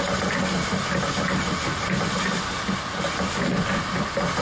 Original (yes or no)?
yes